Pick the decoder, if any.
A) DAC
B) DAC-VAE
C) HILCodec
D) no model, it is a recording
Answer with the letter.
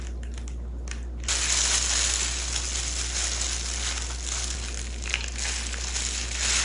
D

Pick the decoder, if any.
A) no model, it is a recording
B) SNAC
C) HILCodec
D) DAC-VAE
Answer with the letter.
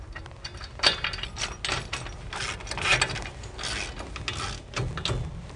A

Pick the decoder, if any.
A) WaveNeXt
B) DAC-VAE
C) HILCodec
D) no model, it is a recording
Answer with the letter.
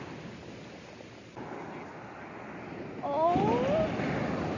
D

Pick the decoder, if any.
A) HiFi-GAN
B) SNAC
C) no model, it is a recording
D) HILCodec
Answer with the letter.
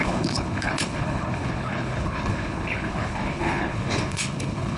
D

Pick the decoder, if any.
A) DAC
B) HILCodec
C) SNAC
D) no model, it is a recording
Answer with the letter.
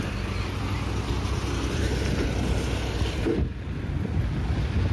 D